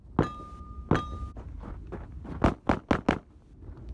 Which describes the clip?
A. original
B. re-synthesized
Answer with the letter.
A